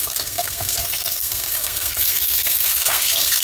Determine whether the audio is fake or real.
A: fake